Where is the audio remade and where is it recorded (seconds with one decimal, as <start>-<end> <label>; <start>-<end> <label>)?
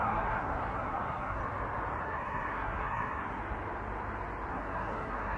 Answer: 0.0-1.4 remade; 1.4-2.0 recorded; 2.0-3.4 remade; 3.4-4.5 recorded; 4.5-5.4 remade